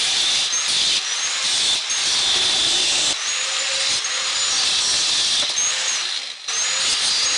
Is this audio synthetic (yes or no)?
no